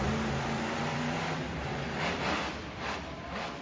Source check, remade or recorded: remade